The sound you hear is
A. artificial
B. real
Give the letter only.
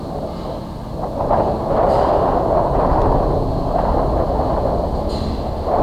B